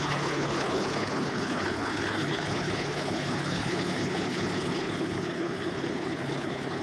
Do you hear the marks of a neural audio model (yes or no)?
yes